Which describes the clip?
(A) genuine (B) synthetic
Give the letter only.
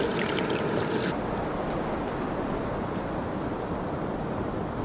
A